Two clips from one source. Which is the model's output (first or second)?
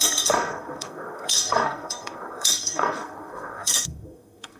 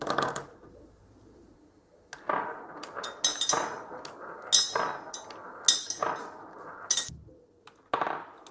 first